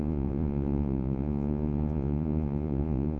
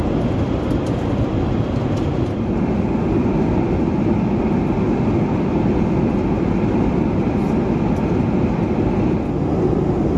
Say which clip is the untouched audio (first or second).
second